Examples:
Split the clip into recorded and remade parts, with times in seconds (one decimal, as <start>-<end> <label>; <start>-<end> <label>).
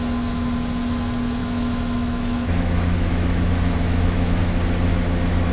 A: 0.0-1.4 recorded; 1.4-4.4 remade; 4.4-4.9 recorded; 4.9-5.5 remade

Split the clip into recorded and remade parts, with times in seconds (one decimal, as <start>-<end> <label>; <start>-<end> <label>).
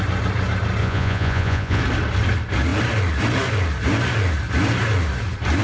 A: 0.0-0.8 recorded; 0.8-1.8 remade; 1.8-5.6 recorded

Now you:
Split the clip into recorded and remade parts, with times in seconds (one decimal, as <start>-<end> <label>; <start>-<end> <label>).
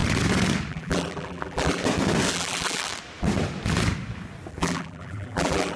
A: 0.0-0.7 recorded; 0.7-1.8 remade; 1.8-2.3 recorded; 2.3-2.9 remade; 2.9-4.5 recorded; 4.5-5.8 remade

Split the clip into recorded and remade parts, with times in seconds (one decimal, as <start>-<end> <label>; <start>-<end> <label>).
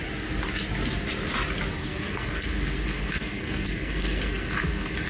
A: 0.0-1.8 recorded; 1.8-5.1 remade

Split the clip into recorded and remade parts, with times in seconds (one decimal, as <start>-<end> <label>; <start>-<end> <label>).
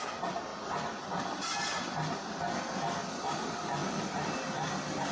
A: 0.0-5.1 recorded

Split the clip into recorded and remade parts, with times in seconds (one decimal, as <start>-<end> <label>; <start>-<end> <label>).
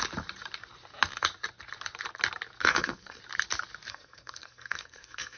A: 0.0-2.6 recorded; 2.6-3.2 remade; 3.2-3.9 recorded; 3.9-5.4 remade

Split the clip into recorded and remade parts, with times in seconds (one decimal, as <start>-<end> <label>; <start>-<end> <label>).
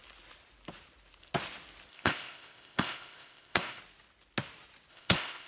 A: 0.0-1.9 recorded; 1.9-3.8 remade; 3.8-4.9 recorded; 4.9-5.5 remade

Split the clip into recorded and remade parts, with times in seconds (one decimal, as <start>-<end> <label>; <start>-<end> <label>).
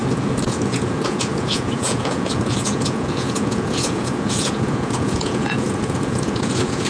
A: 0.0-6.9 remade